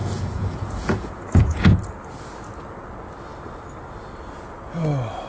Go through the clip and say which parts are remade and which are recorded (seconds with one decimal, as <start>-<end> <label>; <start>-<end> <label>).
0.0-1.7 remade; 1.7-5.3 recorded